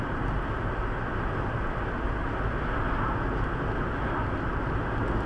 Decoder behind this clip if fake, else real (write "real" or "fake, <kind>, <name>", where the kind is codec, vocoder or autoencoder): real